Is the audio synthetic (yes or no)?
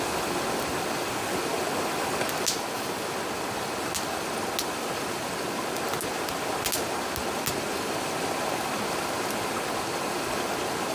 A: no